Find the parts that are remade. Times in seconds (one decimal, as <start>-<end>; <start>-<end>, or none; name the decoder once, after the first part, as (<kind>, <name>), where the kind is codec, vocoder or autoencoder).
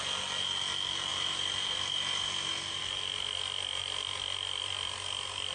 none